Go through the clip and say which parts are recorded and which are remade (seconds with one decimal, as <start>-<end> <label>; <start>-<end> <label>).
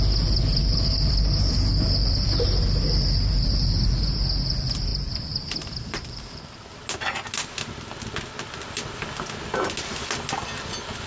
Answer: 0.0-0.6 recorded; 0.6-1.1 remade; 1.1-4.9 recorded; 4.9-6.4 remade; 6.4-11.1 recorded